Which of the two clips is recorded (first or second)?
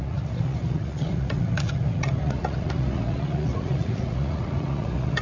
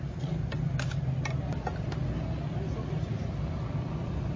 second